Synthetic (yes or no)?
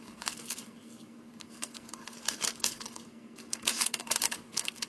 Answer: yes